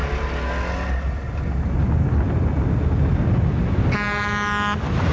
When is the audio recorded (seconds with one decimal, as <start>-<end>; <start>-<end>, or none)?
0.0-5.1